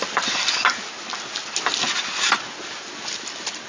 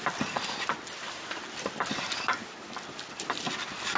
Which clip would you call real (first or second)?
first